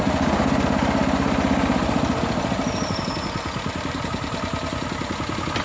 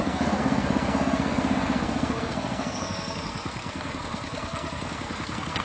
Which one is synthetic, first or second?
second